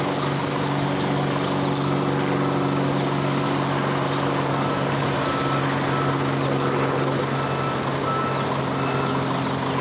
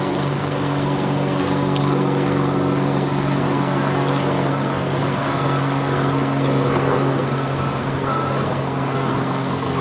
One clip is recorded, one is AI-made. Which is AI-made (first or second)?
second